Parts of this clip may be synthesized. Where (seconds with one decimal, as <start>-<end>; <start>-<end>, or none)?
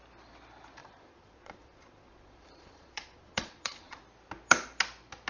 0.8-4.0